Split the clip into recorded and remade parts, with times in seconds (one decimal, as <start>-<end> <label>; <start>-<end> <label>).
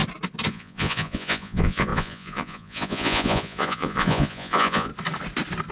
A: 0.0-0.5 recorded; 0.5-4.9 remade; 4.9-5.7 recorded